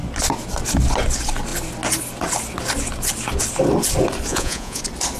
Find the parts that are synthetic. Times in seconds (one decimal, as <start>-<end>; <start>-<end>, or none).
4.3-4.8